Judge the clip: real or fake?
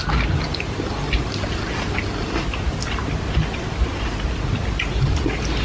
real